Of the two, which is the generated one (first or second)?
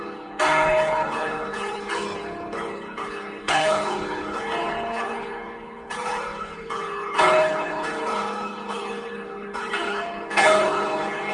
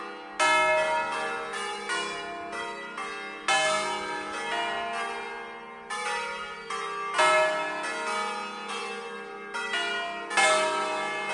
first